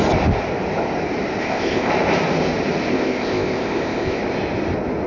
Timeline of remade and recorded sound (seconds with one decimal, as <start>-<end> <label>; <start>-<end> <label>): 0.0-1.4 recorded; 1.4-1.9 remade; 1.9-2.9 recorded; 2.9-4.2 remade; 4.2-5.1 recorded